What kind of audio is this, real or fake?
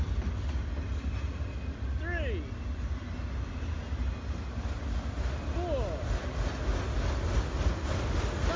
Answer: real